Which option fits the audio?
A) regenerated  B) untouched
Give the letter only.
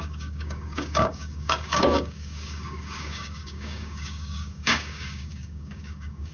A